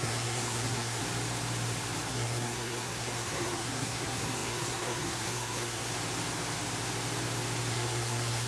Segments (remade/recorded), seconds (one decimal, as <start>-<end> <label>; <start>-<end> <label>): 0.0-1.0 remade; 1.0-2.1 recorded; 2.1-5.9 remade; 5.9-7.7 recorded; 7.7-8.5 remade